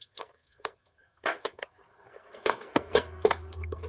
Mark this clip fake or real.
fake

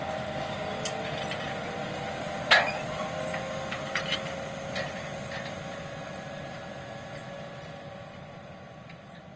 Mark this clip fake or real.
real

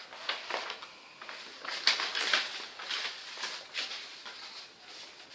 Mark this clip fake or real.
real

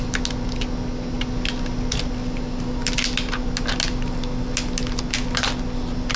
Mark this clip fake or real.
real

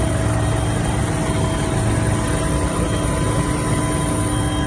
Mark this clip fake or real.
real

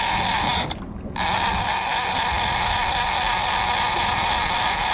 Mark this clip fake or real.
real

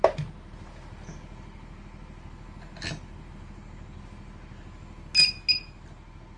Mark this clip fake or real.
real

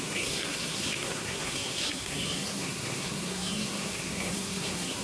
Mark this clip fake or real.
fake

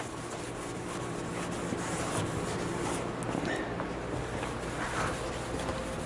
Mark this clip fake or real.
real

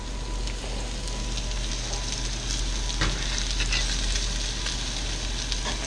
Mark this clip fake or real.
real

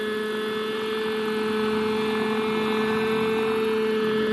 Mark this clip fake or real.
real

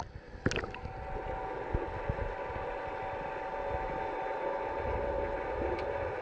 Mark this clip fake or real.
real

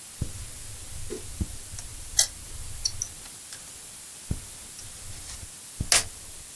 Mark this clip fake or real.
real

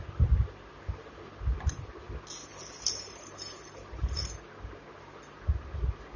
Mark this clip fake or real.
real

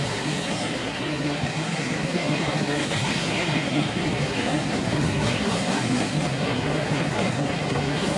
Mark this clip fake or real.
fake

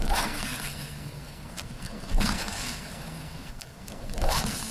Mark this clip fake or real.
fake